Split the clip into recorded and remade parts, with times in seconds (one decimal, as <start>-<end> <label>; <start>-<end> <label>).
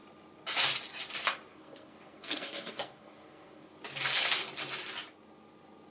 0.0-1.5 recorded; 1.5-3.7 remade; 3.7-5.9 recorded